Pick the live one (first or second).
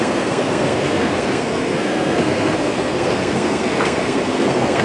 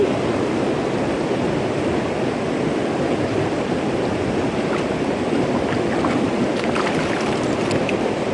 second